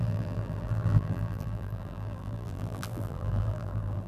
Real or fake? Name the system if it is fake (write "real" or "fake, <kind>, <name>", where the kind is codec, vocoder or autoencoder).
fake, vocoder, BigVGAN v2